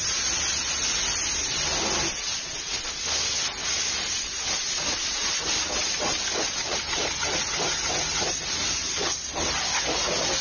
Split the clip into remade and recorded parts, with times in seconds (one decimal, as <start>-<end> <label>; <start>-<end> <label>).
0.0-10.4 recorded